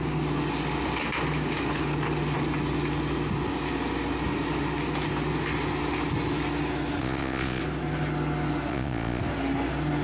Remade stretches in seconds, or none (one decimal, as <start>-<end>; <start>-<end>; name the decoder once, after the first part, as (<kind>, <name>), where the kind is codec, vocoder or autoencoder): 7.0-7.6 (vocoder, Vocos); 8.7-9.2